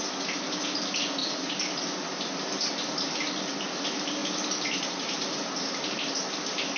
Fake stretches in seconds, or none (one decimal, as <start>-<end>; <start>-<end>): 1.2-1.8